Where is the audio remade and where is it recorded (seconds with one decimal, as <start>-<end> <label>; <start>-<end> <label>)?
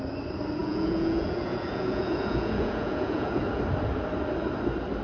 0.0-0.6 recorded; 0.6-3.6 remade; 3.6-5.0 recorded